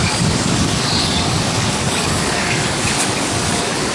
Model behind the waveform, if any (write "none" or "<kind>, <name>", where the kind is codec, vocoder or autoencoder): codec, DAC